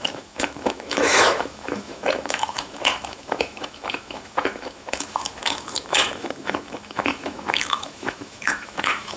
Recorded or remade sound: remade